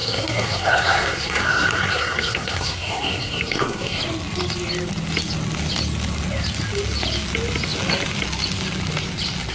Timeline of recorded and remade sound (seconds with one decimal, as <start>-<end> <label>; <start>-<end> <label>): 0.0-4.0 remade; 4.0-9.5 recorded